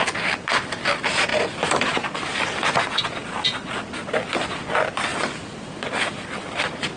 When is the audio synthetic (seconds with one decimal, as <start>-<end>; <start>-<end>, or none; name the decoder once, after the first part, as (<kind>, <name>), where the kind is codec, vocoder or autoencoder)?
none